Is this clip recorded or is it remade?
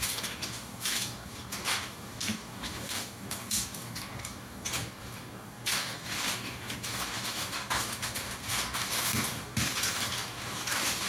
remade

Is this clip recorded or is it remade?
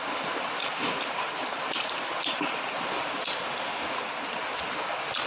recorded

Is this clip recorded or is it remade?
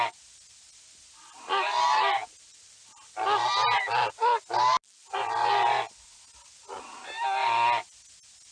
recorded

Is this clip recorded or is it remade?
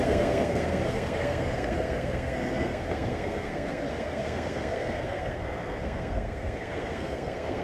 remade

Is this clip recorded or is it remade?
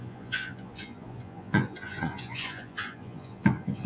remade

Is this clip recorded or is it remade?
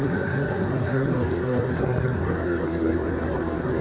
remade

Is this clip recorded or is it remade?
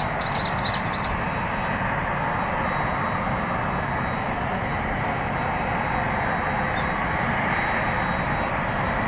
recorded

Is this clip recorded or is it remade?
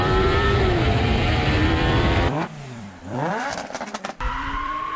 remade